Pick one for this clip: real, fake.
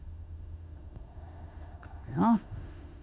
fake